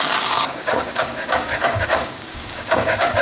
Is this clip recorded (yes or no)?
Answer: no